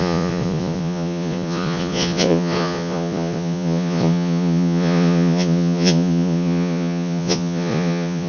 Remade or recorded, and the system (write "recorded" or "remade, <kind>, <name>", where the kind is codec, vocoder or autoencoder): remade, vocoder, Vocos